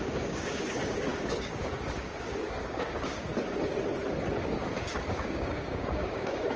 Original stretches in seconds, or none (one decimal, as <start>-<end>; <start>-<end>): 3.3-4.4